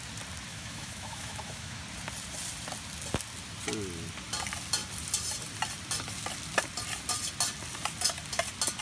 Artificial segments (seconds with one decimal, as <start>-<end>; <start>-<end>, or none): 0.5-1.8